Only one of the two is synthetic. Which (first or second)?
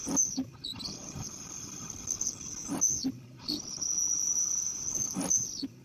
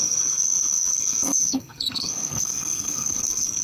second